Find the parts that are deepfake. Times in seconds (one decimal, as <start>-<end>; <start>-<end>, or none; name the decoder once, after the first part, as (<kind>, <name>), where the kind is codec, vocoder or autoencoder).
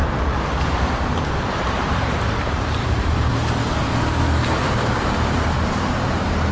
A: 0.0-3.3 (vocoder, BigVGAN v2); 3.8-6.5